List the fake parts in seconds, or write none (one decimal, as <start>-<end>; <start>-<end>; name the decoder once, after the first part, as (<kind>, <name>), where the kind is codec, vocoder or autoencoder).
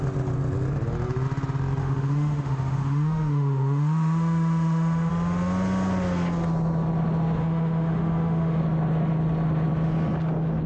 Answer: 1.8-5.1 (autoencoder, DAC-VAE); 7.4-8.6